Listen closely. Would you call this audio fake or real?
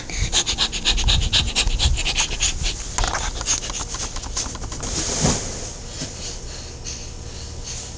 real